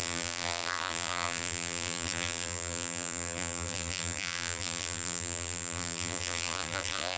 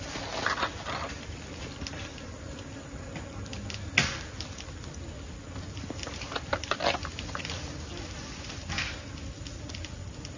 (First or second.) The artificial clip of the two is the first